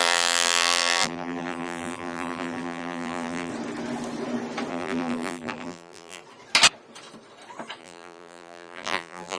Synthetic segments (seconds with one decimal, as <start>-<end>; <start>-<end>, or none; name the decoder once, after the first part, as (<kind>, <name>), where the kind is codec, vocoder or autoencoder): 0.0-3.5 (vocoder, BigVGAN v2); 4.7-6.2; 7.8-9.4